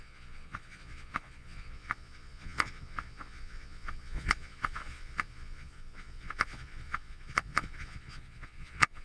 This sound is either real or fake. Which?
fake